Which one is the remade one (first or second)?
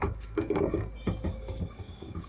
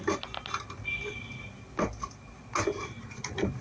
first